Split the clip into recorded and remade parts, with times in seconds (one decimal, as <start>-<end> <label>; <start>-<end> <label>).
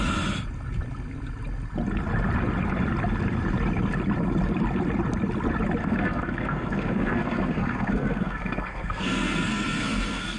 0.0-5.8 recorded; 5.8-10.4 remade